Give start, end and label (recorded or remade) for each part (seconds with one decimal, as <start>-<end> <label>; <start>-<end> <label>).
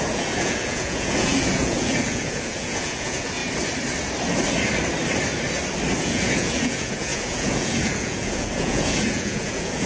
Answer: 0.0-3.4 remade; 3.4-6.0 recorded; 6.0-9.9 remade